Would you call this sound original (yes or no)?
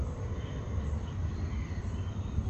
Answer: no